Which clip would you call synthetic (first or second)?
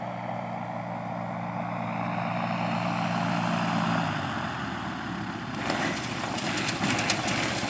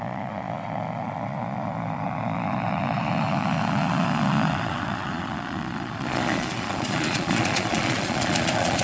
second